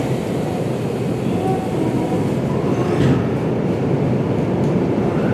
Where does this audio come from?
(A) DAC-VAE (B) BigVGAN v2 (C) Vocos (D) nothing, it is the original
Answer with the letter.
D